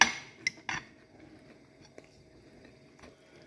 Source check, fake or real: real